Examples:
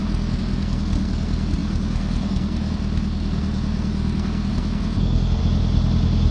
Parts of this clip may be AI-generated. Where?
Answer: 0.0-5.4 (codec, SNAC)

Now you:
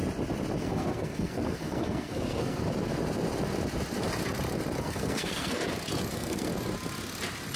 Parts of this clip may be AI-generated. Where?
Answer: 0.6-2.6 (codec, SNAC); 4.8-5.6; 6.1-6.5

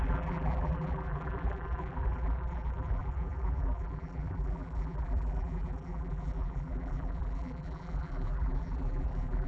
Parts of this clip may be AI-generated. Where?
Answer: 0.0-9.5 (vocoder, BigVGAN v2)

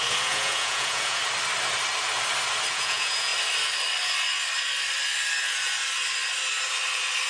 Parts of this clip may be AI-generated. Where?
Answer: 0.0-1.2 (vocoder, Vocos); 2.7-3.3

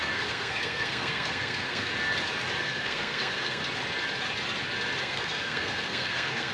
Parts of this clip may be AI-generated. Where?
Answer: 0.0-1.9 (codec, SNAC); 2.6-3.6; 5.0-6.5

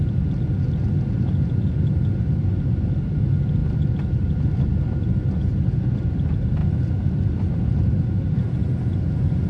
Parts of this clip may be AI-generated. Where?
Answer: none